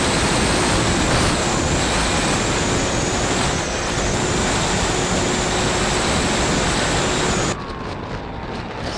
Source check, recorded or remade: recorded